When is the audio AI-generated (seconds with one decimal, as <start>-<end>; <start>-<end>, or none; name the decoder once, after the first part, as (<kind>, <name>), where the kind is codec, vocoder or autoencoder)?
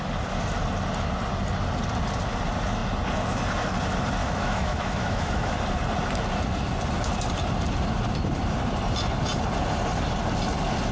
4.2-5.5 (autoencoder, DAC-VAE)